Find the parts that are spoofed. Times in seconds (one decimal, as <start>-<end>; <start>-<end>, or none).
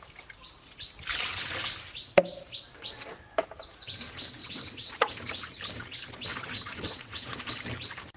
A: 4.4-5.1; 6.3-7.4